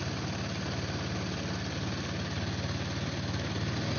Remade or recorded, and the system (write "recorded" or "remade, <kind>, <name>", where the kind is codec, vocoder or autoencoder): recorded